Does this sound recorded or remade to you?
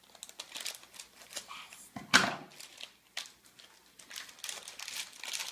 recorded